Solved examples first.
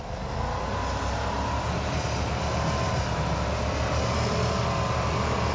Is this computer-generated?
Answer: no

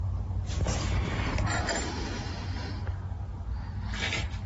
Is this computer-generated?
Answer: no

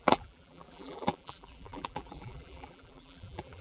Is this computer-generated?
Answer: yes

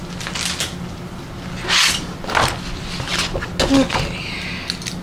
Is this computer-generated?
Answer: no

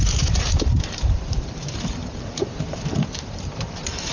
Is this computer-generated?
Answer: yes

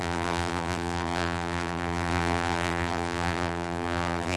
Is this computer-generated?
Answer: yes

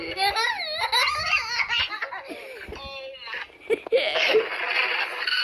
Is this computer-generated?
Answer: no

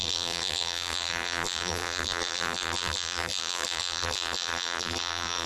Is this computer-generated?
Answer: yes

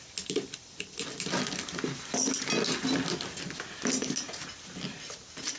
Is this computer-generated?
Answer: no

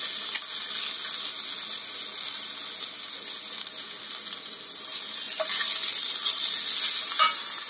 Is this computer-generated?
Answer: no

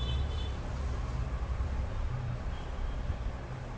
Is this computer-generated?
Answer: yes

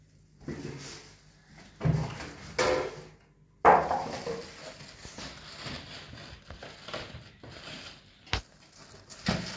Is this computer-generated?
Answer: no